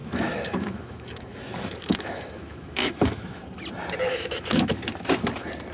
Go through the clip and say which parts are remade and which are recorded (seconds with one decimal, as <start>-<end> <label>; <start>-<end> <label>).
0.0-3.4 remade; 3.4-4.1 recorded; 4.1-4.8 remade; 4.8-5.7 recorded